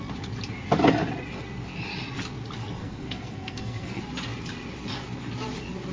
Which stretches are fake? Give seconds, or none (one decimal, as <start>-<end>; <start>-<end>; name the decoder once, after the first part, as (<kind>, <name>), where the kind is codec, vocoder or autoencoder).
2.8-4.0 (codec, SNAC)